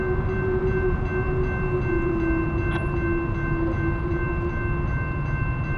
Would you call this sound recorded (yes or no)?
yes